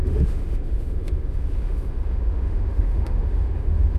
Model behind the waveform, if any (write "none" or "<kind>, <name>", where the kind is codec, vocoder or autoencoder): autoencoder, DAC-VAE